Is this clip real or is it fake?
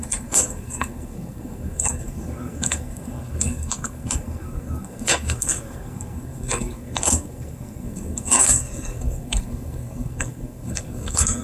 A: fake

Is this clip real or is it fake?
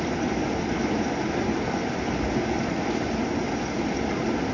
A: real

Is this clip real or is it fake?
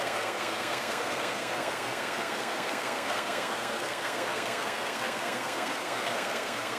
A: fake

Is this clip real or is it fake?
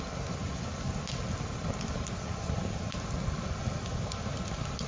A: real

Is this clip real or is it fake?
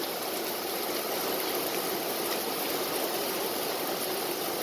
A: real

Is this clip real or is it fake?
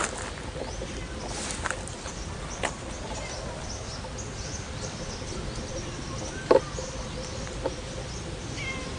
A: real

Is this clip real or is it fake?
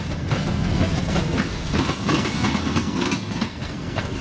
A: fake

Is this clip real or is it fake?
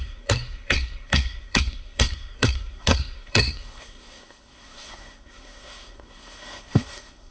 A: fake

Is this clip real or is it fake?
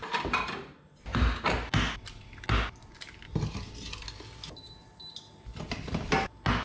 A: real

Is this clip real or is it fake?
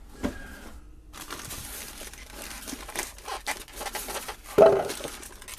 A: real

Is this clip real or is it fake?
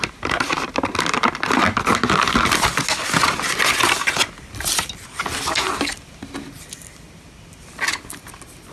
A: real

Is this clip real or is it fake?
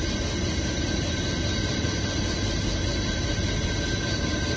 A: real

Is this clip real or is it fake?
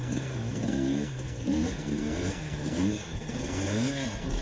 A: fake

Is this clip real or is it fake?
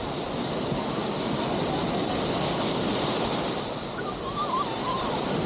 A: real